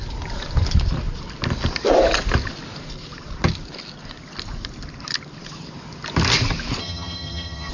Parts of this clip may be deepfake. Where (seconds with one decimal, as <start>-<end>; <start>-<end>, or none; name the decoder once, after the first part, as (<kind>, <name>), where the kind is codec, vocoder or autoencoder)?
6.8-7.7 (vocoder, HiFi-GAN)